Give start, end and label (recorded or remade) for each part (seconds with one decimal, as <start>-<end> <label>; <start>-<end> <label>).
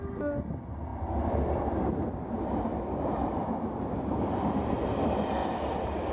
0.0-0.9 recorded; 0.9-4.6 remade; 4.6-5.4 recorded; 5.4-6.1 remade